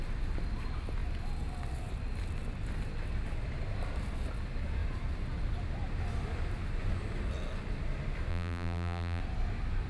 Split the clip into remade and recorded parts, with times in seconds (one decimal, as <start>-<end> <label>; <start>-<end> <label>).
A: 0.0-8.3 recorded; 8.3-9.2 remade; 9.2-9.9 recorded